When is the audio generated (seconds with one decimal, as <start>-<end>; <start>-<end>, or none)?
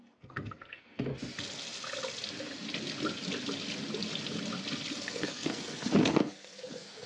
0.0-1.1; 5.0-7.1